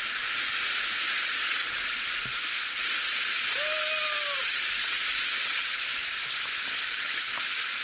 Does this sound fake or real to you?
real